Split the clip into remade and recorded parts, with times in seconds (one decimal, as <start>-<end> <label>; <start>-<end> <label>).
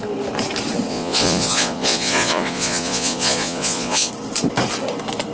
0.0-0.9 recorded; 0.9-4.1 remade; 4.1-5.3 recorded